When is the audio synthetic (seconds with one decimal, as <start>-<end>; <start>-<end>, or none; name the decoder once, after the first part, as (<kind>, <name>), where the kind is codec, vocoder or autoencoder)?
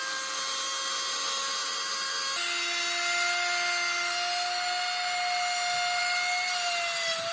none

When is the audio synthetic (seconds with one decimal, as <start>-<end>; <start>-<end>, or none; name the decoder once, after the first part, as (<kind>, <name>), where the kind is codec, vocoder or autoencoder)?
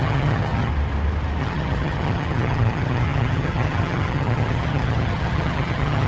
0.0-0.7 (vocoder, HiFi-GAN); 1.4-6.1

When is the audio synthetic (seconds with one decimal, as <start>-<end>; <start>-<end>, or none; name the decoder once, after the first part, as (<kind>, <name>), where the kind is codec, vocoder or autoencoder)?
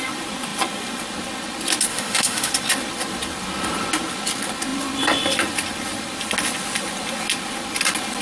1.9-2.5 (autoencoder, DAC-VAE)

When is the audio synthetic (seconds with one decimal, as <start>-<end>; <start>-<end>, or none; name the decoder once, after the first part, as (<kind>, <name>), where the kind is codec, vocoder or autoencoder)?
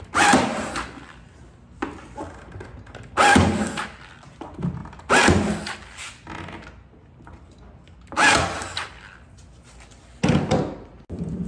none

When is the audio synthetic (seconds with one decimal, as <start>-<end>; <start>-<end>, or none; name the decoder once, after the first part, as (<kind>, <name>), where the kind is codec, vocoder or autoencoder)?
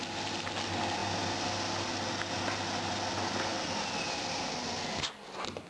none